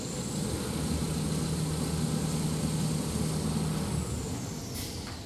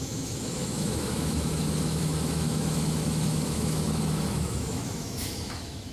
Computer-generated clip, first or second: second